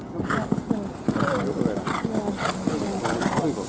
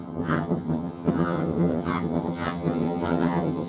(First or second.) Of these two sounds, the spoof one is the second